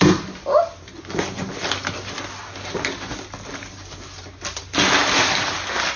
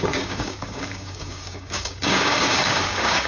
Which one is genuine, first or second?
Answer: first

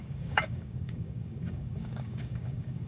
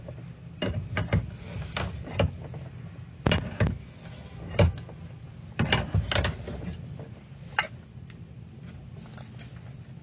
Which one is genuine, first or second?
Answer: second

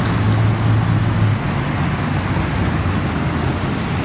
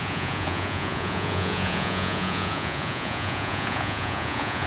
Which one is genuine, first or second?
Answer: first